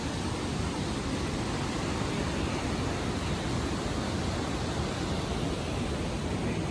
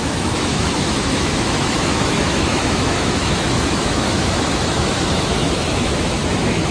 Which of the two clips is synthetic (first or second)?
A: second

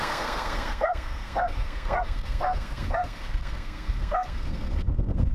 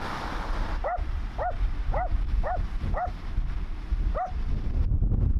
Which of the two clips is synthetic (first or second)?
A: first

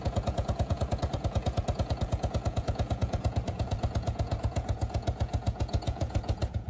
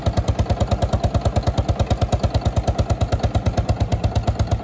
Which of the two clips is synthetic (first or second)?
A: first